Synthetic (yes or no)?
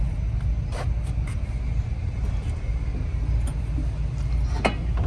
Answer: no